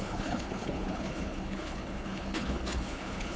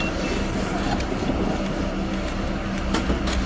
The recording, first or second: second